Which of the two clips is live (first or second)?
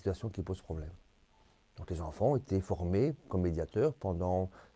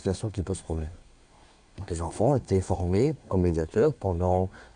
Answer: first